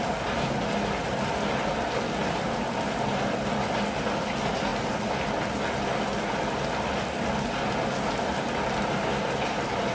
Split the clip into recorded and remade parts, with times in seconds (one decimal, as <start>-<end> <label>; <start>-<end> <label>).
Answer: 0.0-9.9 recorded